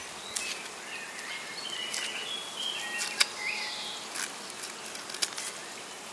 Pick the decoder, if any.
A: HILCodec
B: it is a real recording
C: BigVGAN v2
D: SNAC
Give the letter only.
B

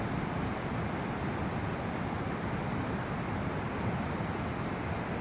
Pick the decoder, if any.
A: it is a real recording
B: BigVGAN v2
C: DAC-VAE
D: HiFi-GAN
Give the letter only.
A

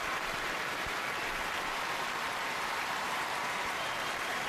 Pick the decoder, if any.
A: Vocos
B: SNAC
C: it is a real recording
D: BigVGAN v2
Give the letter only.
D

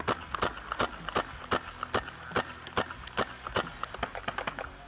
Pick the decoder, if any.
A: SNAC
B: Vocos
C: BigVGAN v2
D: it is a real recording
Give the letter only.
D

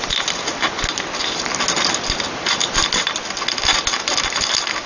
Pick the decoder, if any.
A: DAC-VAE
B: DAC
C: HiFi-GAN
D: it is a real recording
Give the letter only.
D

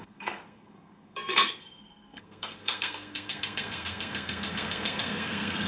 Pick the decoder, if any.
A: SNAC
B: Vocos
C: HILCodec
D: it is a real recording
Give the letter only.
A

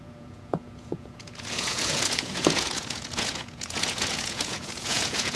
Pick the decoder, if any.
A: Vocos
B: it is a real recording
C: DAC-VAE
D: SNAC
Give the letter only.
A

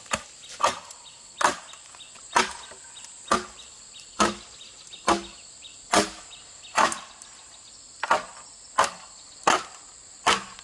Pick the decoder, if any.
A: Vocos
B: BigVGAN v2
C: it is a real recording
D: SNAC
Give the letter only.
C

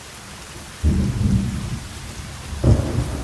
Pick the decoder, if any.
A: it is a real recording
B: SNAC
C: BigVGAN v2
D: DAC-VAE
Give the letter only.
A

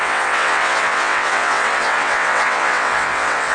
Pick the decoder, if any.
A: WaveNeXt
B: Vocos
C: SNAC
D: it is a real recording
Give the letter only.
A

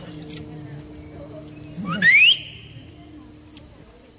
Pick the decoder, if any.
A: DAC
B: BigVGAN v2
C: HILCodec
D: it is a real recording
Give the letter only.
D